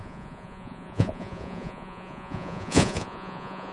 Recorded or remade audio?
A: remade